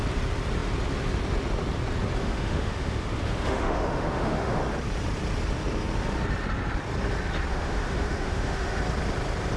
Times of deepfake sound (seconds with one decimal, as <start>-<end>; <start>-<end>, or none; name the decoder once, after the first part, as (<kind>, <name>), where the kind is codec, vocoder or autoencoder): 2.2-4.6 (autoencoder, DAC-VAE); 7.5-8.8